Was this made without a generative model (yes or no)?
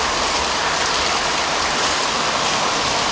yes